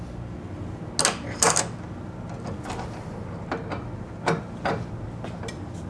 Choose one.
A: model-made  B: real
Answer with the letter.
B